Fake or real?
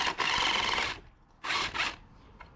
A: real